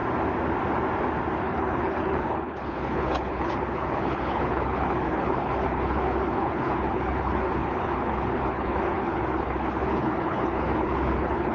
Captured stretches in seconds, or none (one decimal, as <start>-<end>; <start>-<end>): 0.0-1.4